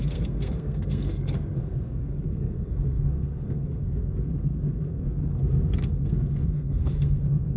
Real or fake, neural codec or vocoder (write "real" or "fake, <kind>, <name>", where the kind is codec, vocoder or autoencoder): fake, codec, SNAC